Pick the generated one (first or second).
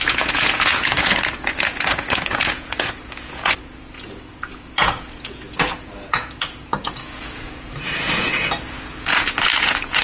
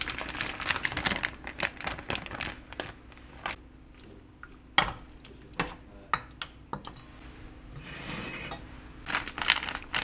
first